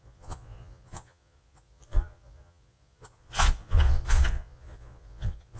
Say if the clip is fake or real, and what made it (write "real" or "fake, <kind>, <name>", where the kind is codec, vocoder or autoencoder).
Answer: fake, vocoder, Vocos